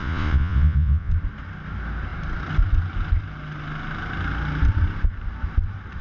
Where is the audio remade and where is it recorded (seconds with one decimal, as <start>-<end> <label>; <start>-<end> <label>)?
0.0-1.1 remade; 1.1-6.0 recorded